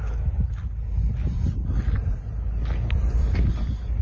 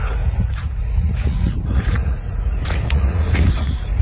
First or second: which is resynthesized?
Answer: second